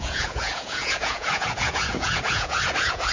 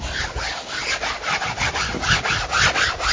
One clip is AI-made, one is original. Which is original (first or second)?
second